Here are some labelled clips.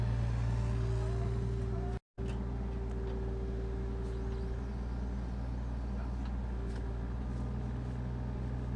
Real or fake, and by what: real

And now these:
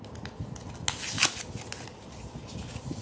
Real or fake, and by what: real